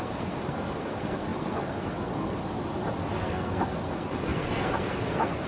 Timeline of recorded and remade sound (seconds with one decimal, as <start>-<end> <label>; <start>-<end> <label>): 0.0-2.4 remade; 2.4-3.2 recorded; 3.2-5.5 remade